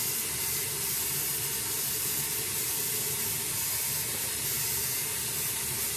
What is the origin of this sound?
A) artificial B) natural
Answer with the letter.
B